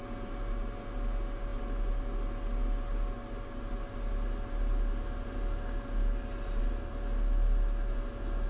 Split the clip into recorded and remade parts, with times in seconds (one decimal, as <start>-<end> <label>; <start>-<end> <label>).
0.0-8.5 recorded

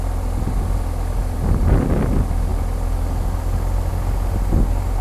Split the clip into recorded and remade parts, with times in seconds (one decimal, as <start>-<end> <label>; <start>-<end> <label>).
0.0-5.0 recorded

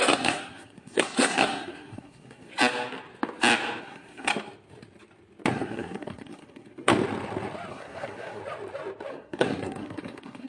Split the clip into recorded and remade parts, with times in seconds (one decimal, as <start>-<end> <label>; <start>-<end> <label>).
0.0-2.5 remade; 2.5-3.8 recorded; 3.8-4.3 remade; 4.3-5.5 recorded; 5.5-6.9 remade; 6.9-7.7 recorded; 7.7-8.4 remade; 8.4-9.1 recorded; 9.1-10.5 remade

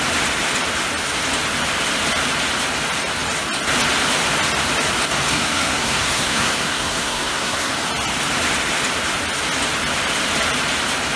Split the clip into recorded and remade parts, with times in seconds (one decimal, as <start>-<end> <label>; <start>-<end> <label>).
0.0-5.3 recorded; 5.3-7.7 remade; 7.7-11.2 recorded